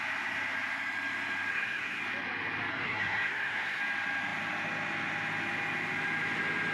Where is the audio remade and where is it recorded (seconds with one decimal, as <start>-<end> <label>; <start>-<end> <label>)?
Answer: 0.0-1.5 recorded; 1.5-2.0 remade; 2.0-2.7 recorded; 2.7-3.8 remade; 3.8-6.7 recorded